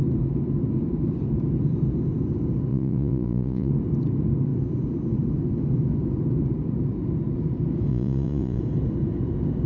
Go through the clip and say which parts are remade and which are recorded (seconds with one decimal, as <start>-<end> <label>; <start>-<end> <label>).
0.0-2.7 recorded; 2.7-3.7 remade; 3.7-7.9 recorded; 7.9-8.6 remade; 8.6-9.7 recorded